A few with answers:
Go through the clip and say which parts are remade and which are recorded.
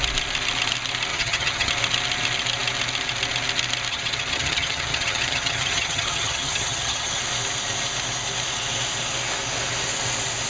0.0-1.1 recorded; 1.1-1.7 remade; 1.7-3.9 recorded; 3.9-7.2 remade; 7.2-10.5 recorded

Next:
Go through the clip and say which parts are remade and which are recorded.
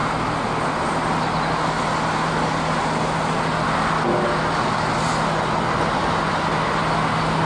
0.0-7.5 recorded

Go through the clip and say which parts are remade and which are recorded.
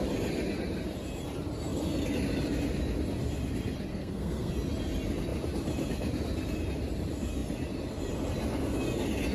0.0-3.9 recorded; 3.9-4.5 remade; 4.5-9.3 recorded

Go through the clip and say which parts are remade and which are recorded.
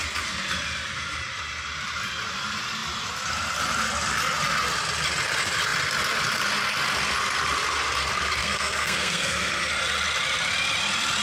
0.0-8.4 recorded; 8.4-9.7 remade; 9.7-11.2 recorded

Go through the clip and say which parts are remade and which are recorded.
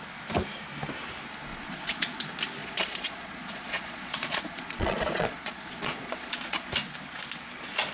0.0-1.5 recorded; 1.5-2.2 remade; 2.2-2.6 recorded; 2.6-6.7 remade; 6.7-7.9 recorded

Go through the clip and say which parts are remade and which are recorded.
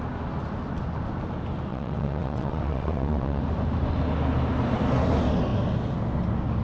0.0-1.7 recorded; 1.7-3.4 remade; 3.4-6.6 recorded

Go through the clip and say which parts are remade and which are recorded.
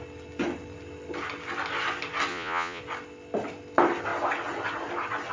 0.0-2.3 recorded; 2.3-2.8 remade; 2.8-5.3 recorded